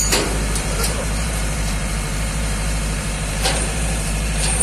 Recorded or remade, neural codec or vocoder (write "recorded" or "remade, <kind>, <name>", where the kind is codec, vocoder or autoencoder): remade, vocoder, BigVGAN v2